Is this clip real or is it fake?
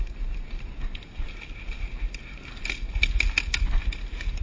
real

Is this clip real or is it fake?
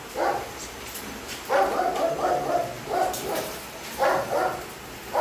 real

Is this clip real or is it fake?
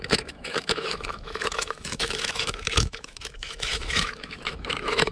fake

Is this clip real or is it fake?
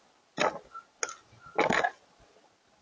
real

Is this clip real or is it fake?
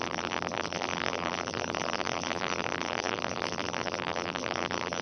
fake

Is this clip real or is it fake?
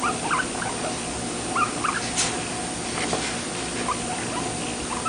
real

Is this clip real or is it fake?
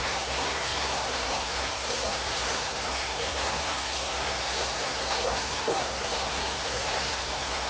fake